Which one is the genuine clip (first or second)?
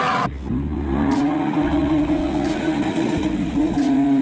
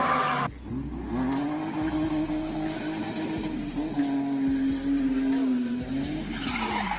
second